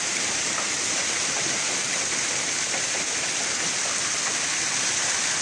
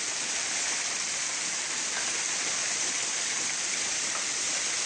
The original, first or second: first